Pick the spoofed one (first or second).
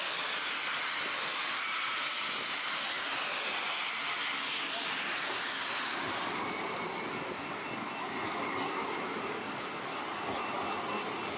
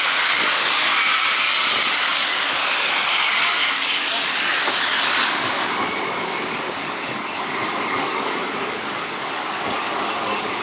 second